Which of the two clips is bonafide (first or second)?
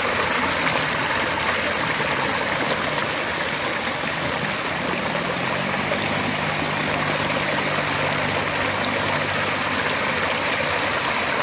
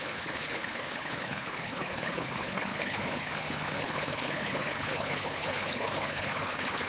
first